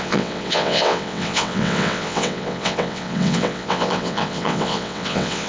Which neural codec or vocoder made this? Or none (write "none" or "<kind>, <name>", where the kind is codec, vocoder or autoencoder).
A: vocoder, WaveNeXt